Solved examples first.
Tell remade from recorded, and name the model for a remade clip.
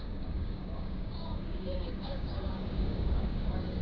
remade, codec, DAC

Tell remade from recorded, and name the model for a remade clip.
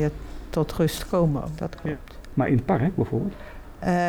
recorded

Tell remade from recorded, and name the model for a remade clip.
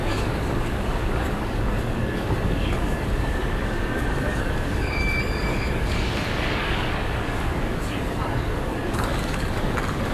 remade, codec, DAC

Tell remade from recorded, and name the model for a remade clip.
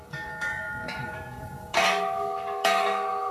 remade, codec, DAC